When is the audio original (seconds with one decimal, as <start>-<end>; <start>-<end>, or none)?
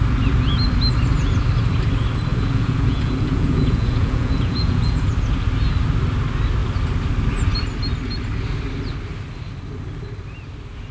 0.0-2.3; 5.1-10.9